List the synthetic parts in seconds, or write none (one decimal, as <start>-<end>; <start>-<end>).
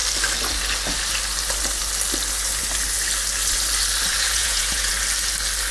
4.1-4.9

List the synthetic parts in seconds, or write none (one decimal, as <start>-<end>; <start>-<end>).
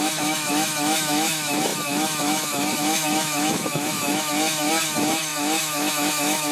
0.0-6.5